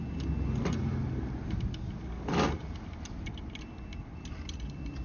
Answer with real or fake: real